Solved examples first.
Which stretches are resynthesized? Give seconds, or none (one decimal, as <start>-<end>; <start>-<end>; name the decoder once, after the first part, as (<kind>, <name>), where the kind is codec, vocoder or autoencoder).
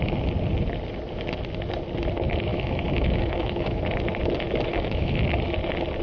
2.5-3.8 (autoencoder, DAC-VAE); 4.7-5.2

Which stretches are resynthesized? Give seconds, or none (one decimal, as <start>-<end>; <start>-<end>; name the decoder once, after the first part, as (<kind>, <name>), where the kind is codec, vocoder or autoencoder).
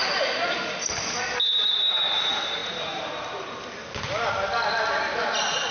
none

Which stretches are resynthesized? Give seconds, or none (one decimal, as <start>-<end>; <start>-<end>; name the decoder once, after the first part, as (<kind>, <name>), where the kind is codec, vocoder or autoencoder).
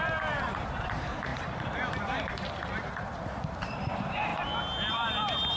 0.0-4.3 (vocoder, BigVGAN v2); 4.9-5.6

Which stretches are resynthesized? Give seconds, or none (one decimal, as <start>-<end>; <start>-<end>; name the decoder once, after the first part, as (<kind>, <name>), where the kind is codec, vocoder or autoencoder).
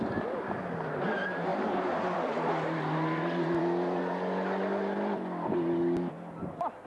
1.5-4.0 (vocoder, BigVGAN v2)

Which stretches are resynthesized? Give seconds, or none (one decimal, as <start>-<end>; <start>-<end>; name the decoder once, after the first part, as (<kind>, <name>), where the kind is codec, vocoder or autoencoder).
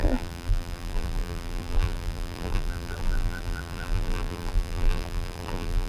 0.0-5.9 (vocoder, BigVGAN v2)